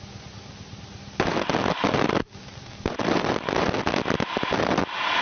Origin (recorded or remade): recorded